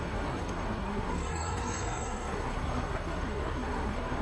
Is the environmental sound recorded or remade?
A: remade